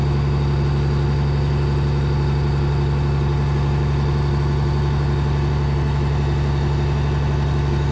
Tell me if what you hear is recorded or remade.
recorded